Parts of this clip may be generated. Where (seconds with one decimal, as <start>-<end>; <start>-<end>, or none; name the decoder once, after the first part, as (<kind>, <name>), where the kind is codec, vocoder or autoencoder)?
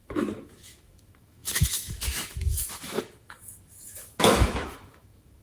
0.0-5.4 (autoencoder, DAC-VAE)